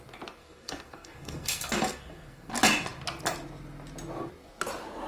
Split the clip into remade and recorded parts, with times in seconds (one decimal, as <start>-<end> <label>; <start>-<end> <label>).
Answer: 0.0-0.4 recorded; 0.4-2.5 remade; 2.5-5.1 recorded